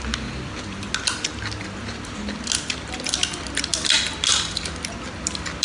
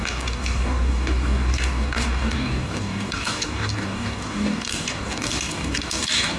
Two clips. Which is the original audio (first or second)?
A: first